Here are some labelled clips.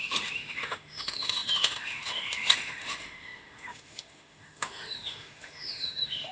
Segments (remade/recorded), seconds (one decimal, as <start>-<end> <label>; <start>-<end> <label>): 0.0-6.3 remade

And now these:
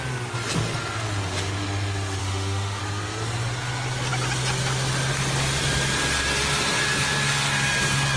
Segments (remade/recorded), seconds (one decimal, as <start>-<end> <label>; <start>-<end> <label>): 0.0-2.2 recorded; 2.2-2.8 remade; 2.8-8.2 recorded

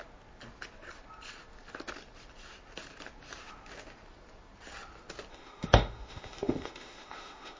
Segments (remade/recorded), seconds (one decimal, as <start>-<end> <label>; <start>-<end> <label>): 0.0-5.3 recorded; 5.3-7.6 remade